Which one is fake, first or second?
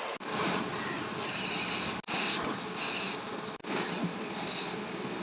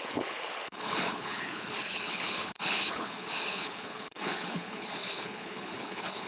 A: second